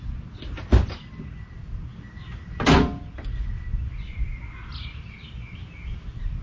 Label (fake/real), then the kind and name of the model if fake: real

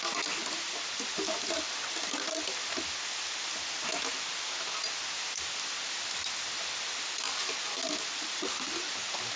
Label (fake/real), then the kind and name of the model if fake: real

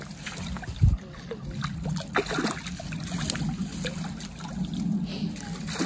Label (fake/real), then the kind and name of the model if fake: real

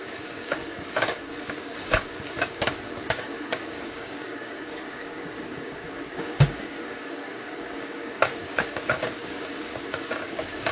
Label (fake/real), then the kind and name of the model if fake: fake, codec, DAC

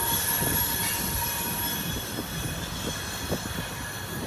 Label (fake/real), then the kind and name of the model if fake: real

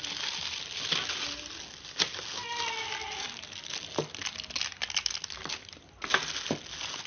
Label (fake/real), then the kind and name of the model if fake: real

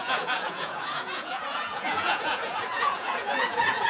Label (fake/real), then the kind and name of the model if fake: fake, vocoder, Vocos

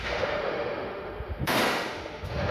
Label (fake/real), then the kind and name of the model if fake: fake, autoencoder, DAC-VAE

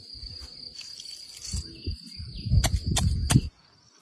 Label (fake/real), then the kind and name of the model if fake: real